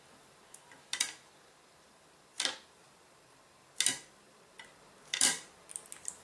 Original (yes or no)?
yes